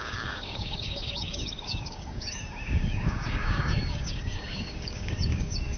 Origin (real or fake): fake